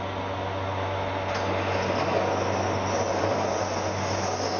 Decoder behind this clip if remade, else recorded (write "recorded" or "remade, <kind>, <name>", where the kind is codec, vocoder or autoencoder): recorded